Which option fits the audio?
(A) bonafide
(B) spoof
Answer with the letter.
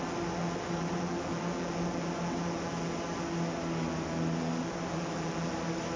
A